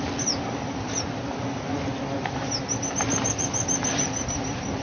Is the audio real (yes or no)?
yes